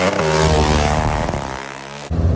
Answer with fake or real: real